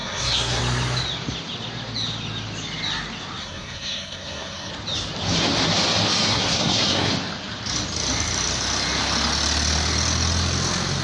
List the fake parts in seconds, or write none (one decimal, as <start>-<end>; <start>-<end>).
0.0-0.6; 3.4-4.7; 6.3-7.1